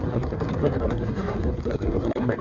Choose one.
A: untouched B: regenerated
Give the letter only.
B